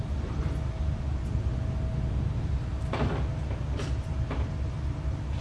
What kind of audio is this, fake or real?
real